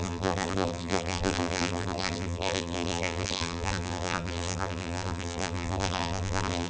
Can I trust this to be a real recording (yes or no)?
no